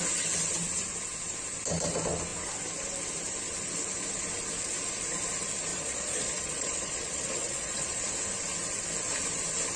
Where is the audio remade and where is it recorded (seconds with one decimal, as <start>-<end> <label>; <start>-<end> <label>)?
0.0-5.7 recorded; 5.7-8.0 remade; 8.0-9.8 recorded